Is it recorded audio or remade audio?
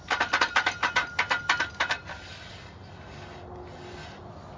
recorded